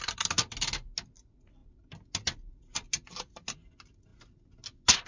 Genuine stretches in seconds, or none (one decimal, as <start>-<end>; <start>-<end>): 0.0-5.1